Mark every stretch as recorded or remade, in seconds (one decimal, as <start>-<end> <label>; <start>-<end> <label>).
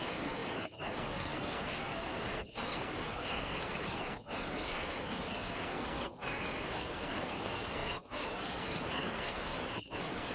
0.0-10.3 remade